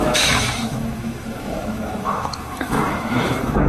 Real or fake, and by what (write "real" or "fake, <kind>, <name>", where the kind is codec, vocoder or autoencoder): fake, autoencoder, DAC-VAE